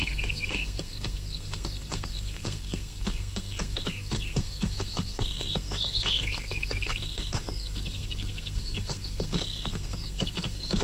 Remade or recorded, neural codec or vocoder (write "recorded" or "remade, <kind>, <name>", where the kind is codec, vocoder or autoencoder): remade, codec, SNAC